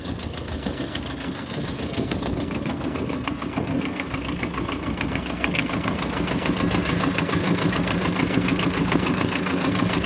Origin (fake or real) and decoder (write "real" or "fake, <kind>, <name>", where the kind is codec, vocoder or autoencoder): fake, codec, SNAC